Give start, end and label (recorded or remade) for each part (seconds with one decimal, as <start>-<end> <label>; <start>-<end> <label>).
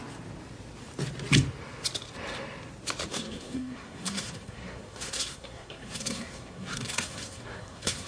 0.0-3.1 recorded; 3.1-8.1 remade